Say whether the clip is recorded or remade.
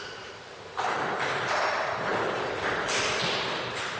recorded